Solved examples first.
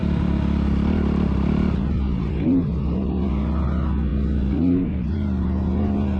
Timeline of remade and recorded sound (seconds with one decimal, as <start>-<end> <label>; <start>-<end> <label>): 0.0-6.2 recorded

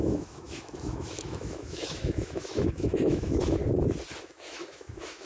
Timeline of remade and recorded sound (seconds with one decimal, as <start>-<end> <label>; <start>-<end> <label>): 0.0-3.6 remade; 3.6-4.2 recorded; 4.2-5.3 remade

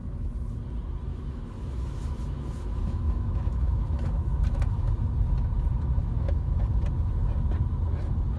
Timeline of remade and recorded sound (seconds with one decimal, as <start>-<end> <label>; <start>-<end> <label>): 0.0-0.6 remade; 0.6-1.1 recorded; 1.1-4.9 remade; 4.9-6.0 recorded; 6.0-6.6 remade; 6.6-8.4 recorded